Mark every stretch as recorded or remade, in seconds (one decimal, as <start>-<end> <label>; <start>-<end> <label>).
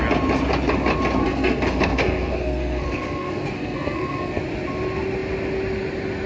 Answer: 0.0-1.2 recorded; 1.2-4.4 remade; 4.4-6.3 recorded